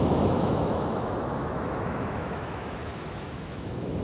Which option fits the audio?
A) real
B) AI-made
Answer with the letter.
B